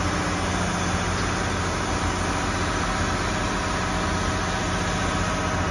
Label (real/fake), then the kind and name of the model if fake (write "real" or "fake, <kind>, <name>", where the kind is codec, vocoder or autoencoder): real